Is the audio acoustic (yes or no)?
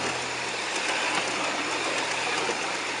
yes